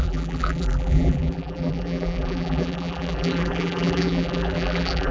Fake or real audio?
fake